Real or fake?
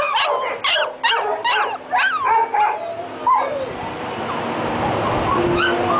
real